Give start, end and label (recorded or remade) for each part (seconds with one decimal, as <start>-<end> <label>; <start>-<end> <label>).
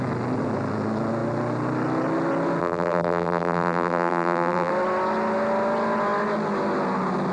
0.0-2.6 recorded; 2.6-4.7 remade; 4.7-7.3 recorded